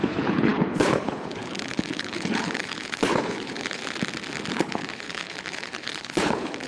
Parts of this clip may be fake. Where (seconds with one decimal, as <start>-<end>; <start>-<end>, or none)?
0.0-3.8; 4.5-6.7